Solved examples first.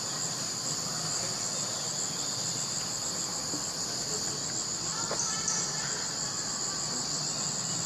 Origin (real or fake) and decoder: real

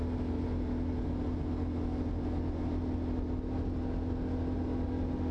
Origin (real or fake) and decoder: real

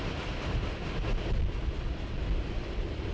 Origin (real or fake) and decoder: real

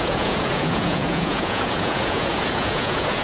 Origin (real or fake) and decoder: fake, vocoder, Vocos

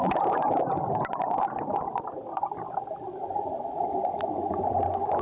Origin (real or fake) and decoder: real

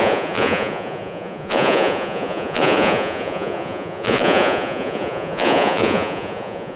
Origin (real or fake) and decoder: fake, vocoder, Vocos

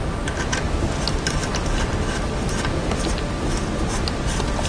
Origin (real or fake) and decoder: real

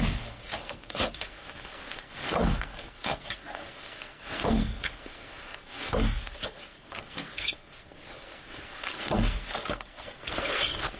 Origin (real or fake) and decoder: fake, codec, SNAC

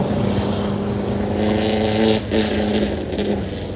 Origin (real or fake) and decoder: real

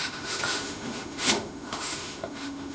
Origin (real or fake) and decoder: fake, autoencoder, DAC-VAE